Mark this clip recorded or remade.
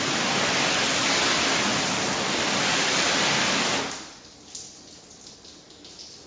recorded